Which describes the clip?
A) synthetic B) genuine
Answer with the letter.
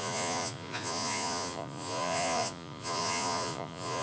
A